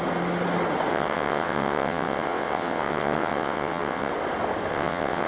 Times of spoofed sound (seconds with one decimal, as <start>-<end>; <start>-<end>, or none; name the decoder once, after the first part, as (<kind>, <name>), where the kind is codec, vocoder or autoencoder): 0.9-4.1 (vocoder, WaveNeXt); 4.7-5.3